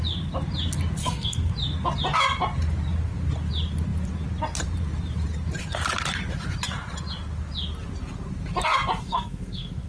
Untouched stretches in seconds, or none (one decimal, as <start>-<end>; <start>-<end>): 0.0-1.0; 1.5-9.0